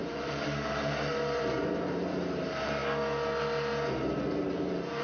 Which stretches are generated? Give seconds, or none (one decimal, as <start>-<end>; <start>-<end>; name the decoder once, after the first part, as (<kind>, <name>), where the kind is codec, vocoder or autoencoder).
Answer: 0.0-2.8 (vocoder, BigVGAN v2); 4.4-5.0